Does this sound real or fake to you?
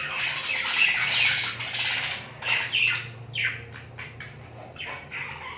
real